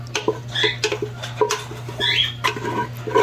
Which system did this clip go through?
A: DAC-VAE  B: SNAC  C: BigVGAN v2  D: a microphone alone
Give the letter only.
D